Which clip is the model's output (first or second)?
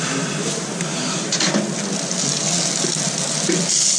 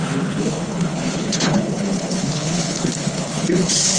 second